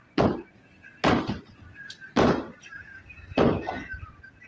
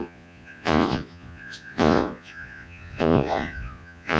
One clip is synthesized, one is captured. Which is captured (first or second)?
first